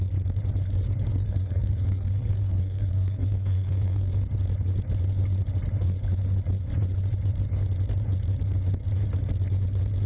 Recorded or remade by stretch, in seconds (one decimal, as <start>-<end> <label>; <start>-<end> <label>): 0.0-1.1 recorded; 1.1-4.1 remade; 4.1-10.1 recorded